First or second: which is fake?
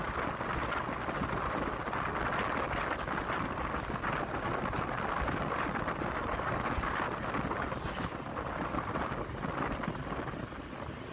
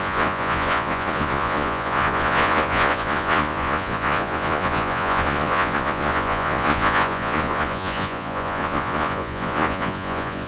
second